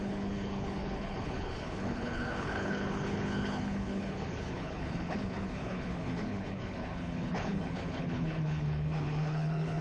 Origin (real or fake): fake